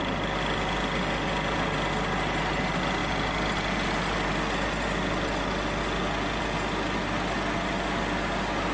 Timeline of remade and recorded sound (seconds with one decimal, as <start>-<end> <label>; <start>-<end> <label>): 0.0-8.7 recorded

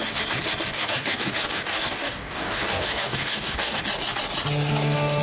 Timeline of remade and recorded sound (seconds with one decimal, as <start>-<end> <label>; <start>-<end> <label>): 0.0-0.7 recorded; 0.7-3.8 remade; 3.8-5.2 recorded

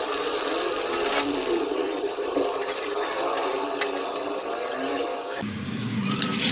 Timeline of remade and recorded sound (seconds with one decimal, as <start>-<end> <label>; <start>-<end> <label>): 0.0-5.1 recorded; 5.1-6.0 remade; 6.0-6.5 recorded

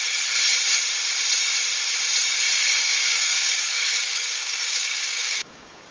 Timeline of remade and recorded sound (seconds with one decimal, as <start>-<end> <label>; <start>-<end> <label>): 0.0-2.6 recorded; 2.6-5.9 remade

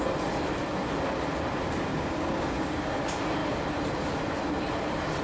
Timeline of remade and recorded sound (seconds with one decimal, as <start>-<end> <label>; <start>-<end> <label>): 0.0-1.9 recorded; 1.9-2.8 remade; 2.8-5.2 recorded

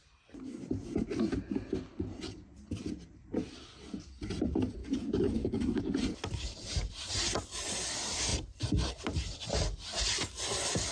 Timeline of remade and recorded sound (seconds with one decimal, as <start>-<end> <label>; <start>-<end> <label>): 0.0-4.8 recorded; 4.8-5.8 remade; 5.8-10.9 recorded